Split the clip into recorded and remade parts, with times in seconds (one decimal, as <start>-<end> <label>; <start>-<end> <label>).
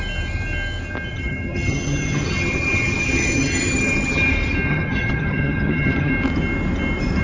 0.0-1.1 recorded; 1.1-4.3 remade; 4.3-4.7 recorded; 4.7-6.1 remade; 6.1-7.2 recorded